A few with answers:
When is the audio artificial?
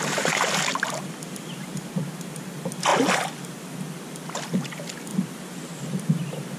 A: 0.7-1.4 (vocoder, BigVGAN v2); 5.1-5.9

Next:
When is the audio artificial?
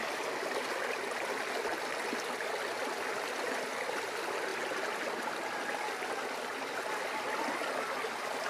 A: none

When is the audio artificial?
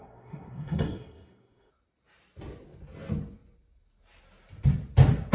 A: 0.0-1.7 (codec, SNAC)